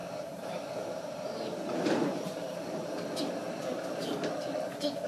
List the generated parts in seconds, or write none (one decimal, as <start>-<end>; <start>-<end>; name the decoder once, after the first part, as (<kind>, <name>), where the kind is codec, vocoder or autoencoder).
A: 0.0-3.1 (vocoder, BigVGAN v2)